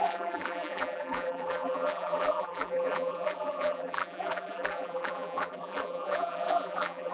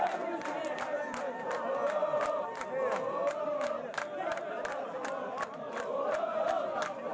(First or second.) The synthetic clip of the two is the first